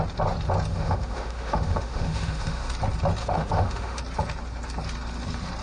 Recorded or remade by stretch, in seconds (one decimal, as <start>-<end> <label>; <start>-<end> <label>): 0.0-0.7 recorded; 0.7-2.7 remade; 2.7-3.2 recorded; 3.2-4.0 remade; 4.0-5.6 recorded